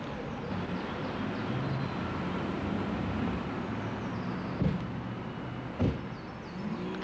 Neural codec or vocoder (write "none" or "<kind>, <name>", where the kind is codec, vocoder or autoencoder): none